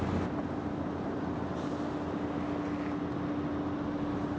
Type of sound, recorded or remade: recorded